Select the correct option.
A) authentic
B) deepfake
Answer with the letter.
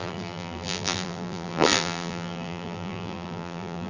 B